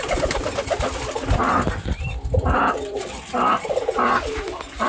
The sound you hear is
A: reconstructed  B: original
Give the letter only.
B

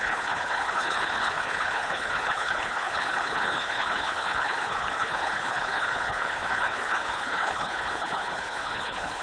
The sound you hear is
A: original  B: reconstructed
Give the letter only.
B